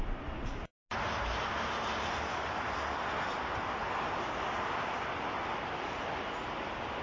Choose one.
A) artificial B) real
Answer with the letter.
B